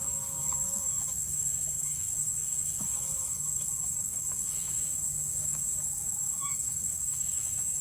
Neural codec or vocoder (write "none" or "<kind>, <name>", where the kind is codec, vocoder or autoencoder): autoencoder, DAC-VAE